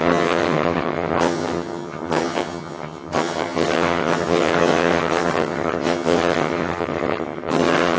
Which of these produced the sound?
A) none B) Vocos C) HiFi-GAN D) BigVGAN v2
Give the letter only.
C